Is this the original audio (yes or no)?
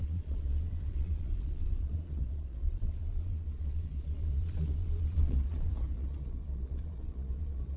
no